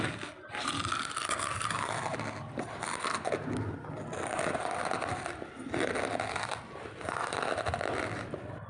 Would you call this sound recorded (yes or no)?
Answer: yes